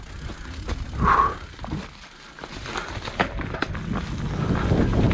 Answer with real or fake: real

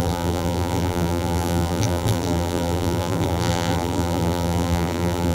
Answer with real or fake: fake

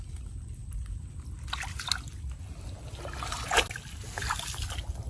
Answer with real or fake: real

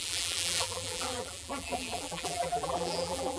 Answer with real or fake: fake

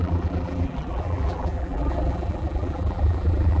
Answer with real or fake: fake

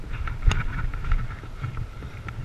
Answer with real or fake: fake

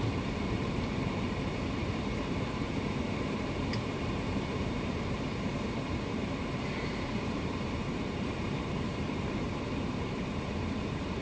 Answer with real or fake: fake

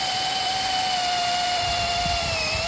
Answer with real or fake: fake